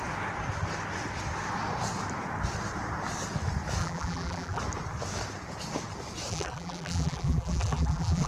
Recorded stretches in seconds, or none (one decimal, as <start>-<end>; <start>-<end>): 0.0-3.8; 4.6-6.3